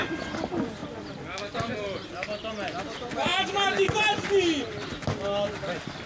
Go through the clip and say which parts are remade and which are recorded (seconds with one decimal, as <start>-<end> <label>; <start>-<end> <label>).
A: 0.0-6.1 recorded